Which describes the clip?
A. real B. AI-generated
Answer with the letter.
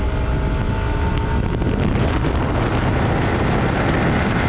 A